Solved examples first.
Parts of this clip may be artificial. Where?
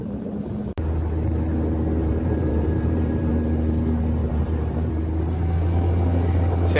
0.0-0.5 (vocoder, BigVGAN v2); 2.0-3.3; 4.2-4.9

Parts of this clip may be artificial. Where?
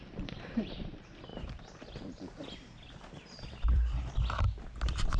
1.3-4.0 (vocoder, BigVGAN v2)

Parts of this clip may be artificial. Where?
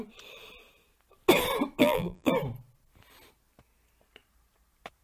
1.8-2.3 (vocoder, BigVGAN v2)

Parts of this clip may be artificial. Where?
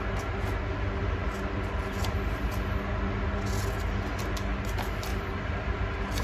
5.1-5.8 (vocoder, BigVGAN v2)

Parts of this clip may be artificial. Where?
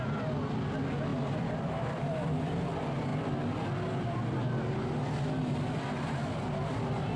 1.1-2.0 (vocoder, BigVGAN v2)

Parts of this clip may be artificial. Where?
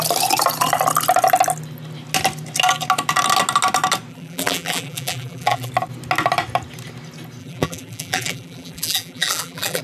4.1-5.7 (vocoder, BigVGAN v2); 7.4-9.8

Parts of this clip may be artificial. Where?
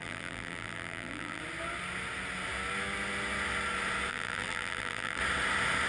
0.0-1.4 (vocoder, BigVGAN v2); 4.1-5.2